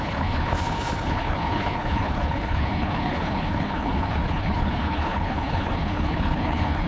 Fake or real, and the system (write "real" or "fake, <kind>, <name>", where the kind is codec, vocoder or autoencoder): fake, codec, HILCodec